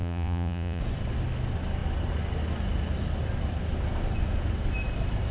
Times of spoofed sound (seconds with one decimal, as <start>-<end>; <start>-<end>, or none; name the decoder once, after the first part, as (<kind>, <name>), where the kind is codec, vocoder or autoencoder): 0.0-0.8 (vocoder, Vocos)

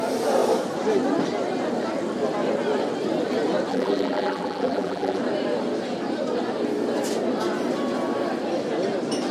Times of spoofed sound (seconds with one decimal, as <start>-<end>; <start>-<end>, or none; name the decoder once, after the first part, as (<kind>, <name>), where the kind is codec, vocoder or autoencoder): 3.7-5.2 (vocoder, BigVGAN v2)

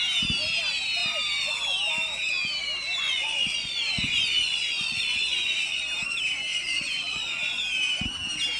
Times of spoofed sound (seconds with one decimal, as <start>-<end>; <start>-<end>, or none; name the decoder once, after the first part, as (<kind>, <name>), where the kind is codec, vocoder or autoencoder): 3.0-5.8 (vocoder, Vocos); 6.5-7.6

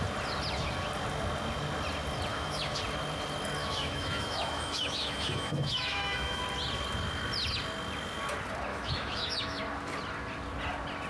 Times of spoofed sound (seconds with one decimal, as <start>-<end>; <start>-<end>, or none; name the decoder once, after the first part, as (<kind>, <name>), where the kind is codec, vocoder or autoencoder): 2.3-2.8 (autoencoder, DAC-VAE); 3.6-6.4; 8.7-9.6

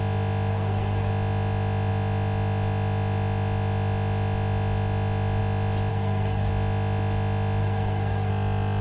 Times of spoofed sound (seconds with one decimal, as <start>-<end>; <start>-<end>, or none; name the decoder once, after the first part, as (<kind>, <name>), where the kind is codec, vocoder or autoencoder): 0.5-1.1 (codec, SNAC); 5.9-6.5; 7.6-8.3

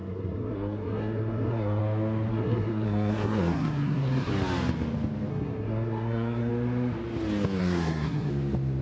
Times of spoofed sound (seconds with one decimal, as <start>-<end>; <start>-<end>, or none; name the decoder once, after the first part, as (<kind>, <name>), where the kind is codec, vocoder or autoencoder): 0.0-1.8 (codec, SNAC); 2.3-4.3; 5.3-6.5; 7.6-8.3